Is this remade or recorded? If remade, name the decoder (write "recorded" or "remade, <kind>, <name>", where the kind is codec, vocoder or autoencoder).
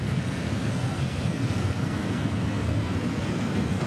remade, codec, SNAC